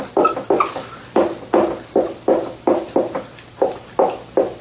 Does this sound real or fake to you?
real